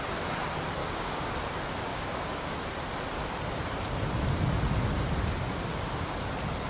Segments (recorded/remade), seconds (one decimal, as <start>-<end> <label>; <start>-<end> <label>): 0.0-0.8 recorded; 0.8-1.3 remade; 1.3-1.9 recorded; 1.9-2.5 remade; 2.5-6.7 recorded